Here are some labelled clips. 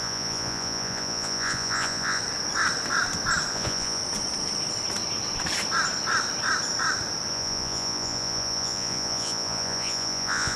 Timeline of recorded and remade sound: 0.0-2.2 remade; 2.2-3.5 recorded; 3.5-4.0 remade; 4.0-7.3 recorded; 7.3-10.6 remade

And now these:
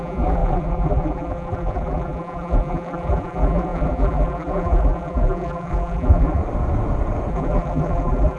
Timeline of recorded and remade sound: 0.0-6.4 remade; 6.4-7.3 recorded; 7.3-8.4 remade